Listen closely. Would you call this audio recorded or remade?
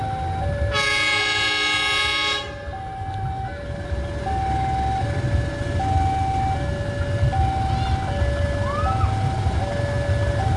recorded